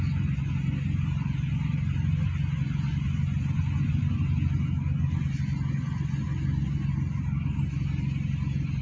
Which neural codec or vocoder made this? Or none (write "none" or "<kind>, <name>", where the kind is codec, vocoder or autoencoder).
none